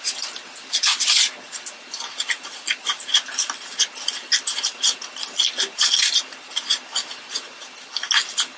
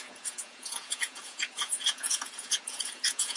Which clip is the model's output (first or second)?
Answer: second